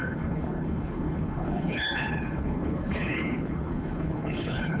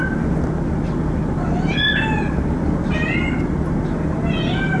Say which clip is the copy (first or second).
first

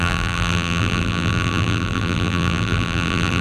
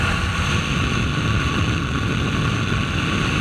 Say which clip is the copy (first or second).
first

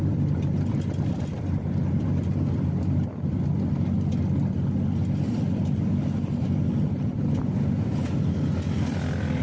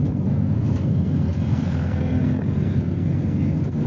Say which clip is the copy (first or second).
second